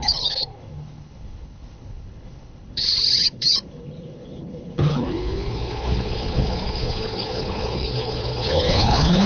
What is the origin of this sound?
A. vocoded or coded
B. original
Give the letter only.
A